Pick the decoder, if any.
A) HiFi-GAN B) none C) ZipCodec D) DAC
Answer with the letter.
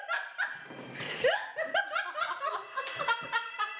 B